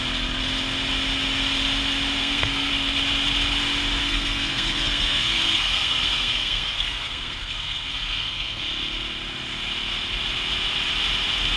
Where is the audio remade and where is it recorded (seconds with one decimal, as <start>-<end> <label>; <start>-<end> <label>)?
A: 0.0-2.2 recorded; 2.2-2.7 remade; 2.7-4.0 recorded; 4.0-8.6 remade; 8.6-11.6 recorded